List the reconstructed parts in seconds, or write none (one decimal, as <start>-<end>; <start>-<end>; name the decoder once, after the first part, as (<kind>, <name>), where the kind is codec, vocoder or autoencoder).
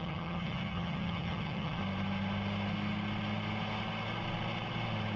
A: 0.0-1.8 (vocoder, HiFi-GAN)